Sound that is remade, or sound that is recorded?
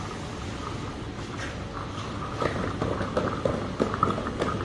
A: recorded